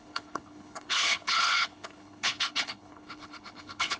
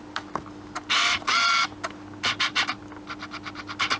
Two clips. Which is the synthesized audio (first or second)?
first